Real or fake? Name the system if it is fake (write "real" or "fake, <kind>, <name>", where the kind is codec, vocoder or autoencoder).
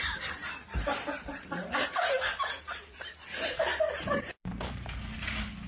fake, vocoder, BigVGAN v2